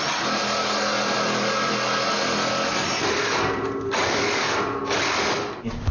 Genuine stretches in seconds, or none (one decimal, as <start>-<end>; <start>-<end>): 0.0-5.9